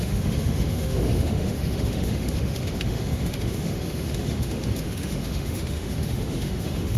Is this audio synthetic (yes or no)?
yes